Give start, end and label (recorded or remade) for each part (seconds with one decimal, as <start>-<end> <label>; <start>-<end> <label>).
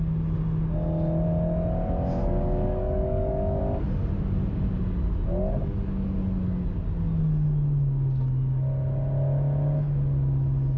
0.0-2.2 recorded; 2.2-3.6 remade; 3.6-10.8 recorded